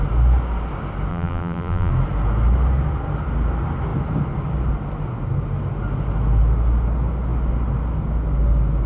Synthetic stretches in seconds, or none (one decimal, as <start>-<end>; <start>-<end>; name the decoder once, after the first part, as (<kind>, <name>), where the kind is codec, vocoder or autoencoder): 1.1-1.9 (vocoder, BigVGAN v2)